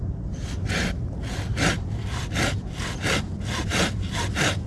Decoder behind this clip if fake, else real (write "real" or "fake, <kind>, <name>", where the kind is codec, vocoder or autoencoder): real